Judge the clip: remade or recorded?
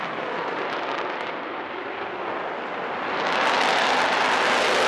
recorded